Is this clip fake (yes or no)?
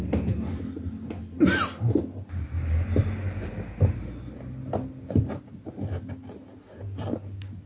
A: no